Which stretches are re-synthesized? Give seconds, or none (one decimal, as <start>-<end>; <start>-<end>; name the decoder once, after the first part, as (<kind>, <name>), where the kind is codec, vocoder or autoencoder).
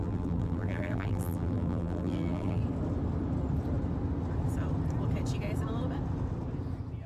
0.0-2.6 (vocoder, BigVGAN v2)